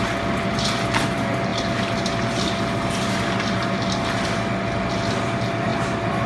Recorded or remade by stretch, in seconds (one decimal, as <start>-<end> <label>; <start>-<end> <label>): 0.0-6.3 recorded